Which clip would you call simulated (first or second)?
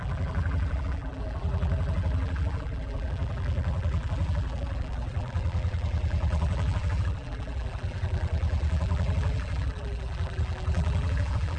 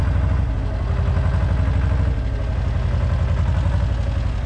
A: first